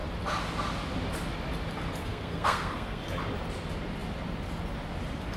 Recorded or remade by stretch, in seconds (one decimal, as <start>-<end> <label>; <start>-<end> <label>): 0.0-2.0 recorded; 2.0-3.0 remade; 3.0-5.4 recorded